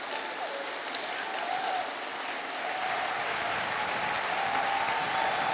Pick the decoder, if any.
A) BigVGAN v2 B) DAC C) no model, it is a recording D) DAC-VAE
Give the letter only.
C